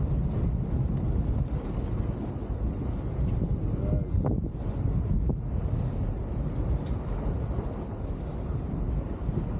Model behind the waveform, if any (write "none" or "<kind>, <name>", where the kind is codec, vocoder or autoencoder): none